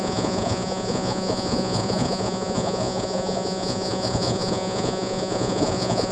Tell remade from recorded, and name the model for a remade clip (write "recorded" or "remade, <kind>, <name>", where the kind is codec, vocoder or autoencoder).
remade, vocoder, Vocos